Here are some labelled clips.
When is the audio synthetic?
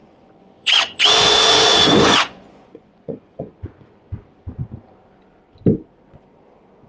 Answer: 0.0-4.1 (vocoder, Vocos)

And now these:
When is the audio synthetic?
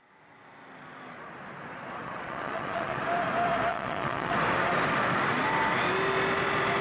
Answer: 1.7-3.0 (vocoder, Vocos); 3.7-4.3